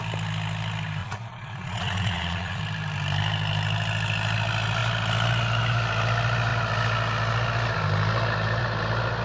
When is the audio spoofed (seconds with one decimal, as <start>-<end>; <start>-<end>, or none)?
1.0-2.6